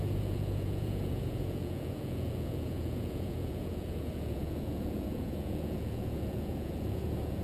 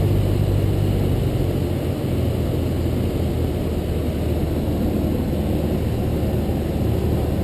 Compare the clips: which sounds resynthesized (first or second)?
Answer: first